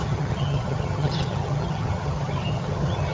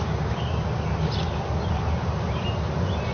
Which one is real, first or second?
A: second